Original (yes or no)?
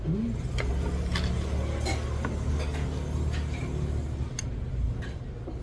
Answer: yes